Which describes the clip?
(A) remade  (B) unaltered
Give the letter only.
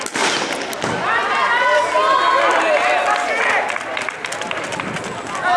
B